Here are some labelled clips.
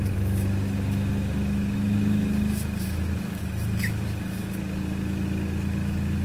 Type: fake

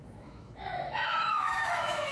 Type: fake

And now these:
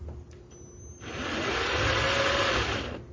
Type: real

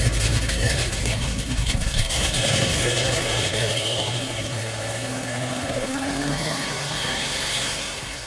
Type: fake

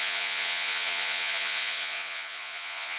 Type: fake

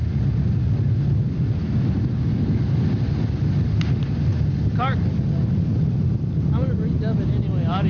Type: real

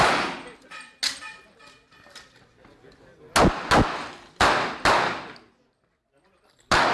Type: real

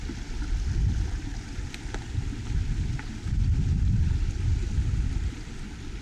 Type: real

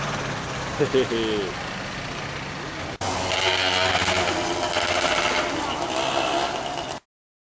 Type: real